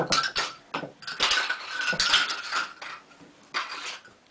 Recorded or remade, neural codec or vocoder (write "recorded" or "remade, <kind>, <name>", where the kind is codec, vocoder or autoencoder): recorded